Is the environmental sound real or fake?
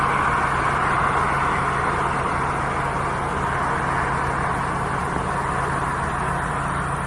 real